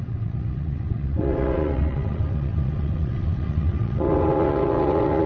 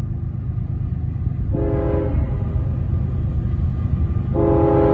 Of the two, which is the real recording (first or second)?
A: second